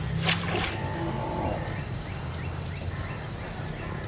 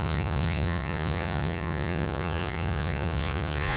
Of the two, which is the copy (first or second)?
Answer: second